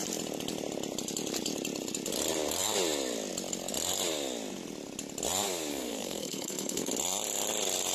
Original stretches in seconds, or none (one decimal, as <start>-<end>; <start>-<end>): 0.0-5.7; 6.9-7.9